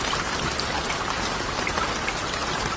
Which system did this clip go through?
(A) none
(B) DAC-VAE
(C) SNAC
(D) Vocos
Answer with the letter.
A